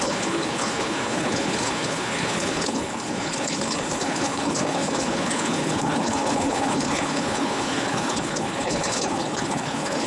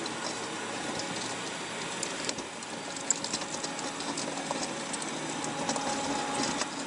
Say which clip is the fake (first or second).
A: first